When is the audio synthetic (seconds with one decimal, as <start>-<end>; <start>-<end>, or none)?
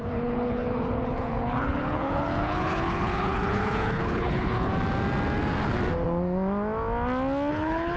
0.0-4.7; 7.5-8.0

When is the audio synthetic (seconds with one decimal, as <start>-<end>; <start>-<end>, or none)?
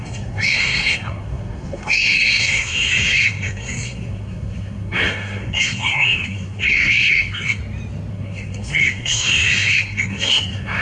0.0-7.6; 8.1-10.8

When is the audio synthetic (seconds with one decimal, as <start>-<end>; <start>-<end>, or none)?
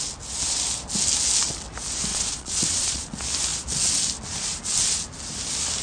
2.1-3.1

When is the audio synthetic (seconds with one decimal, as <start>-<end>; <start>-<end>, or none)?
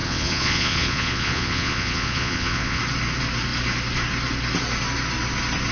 0.0-2.8